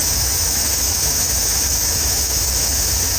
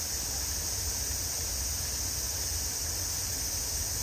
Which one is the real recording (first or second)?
second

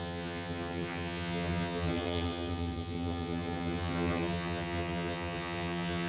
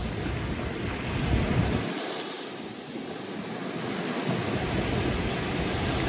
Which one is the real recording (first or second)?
second